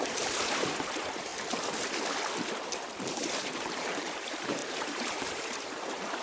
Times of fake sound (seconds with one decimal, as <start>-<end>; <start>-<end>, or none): 0.0-1.3; 3.1-6.2